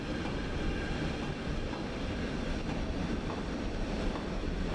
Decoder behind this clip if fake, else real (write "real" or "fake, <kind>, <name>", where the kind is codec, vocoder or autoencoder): real